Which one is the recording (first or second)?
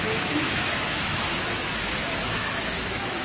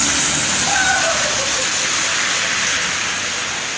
second